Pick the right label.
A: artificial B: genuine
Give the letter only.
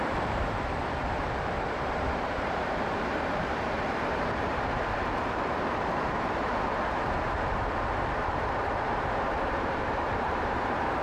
A